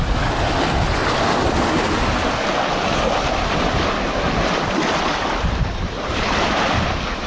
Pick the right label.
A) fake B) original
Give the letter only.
B